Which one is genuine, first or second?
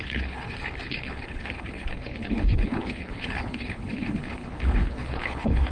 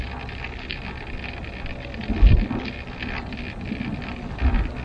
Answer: second